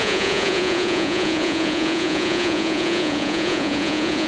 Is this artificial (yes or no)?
yes